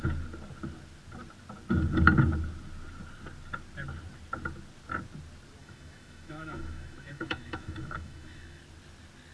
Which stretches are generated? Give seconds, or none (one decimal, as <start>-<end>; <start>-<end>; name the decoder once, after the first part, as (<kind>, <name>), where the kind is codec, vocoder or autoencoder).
5.6-8.6 (autoencoder, DAC-VAE)